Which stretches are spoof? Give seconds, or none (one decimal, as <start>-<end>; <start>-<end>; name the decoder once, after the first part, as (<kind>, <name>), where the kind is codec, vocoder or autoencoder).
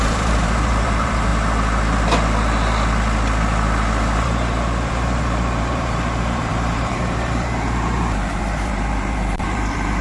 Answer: 0.0-1.3 (vocoder, BigVGAN v2); 4.2-10.0